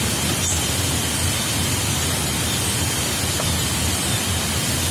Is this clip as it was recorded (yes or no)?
yes